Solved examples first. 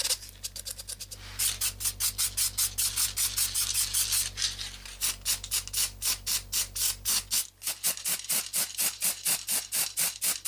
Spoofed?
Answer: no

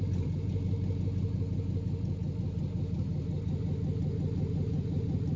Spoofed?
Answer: no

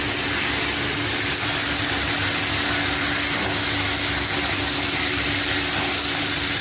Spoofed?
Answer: no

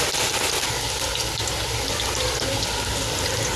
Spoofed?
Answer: no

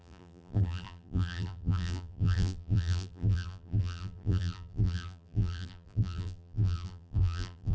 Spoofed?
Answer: yes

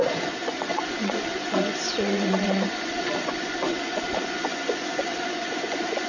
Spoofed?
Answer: yes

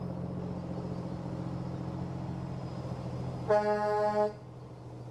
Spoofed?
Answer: no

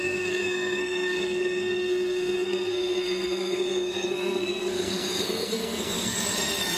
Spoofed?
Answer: yes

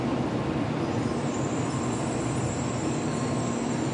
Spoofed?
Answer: no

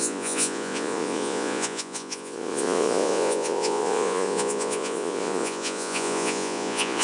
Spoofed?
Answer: yes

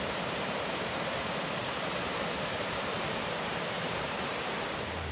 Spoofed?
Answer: yes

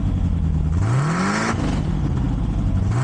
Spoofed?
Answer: no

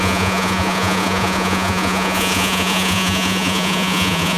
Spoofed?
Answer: yes